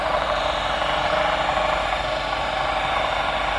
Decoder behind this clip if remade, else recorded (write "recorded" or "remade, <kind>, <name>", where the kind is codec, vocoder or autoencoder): recorded